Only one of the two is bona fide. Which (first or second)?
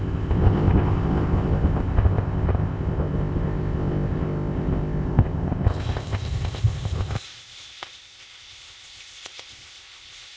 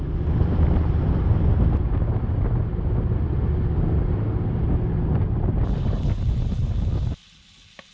second